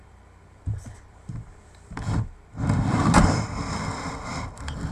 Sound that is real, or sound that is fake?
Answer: fake